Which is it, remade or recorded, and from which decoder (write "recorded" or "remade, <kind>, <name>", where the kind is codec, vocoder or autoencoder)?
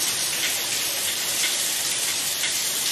remade, vocoder, BigVGAN v2